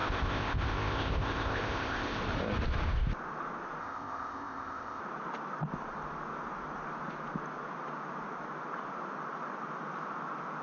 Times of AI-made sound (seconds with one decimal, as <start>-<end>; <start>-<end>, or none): 0.0-2.2; 3.8-5.0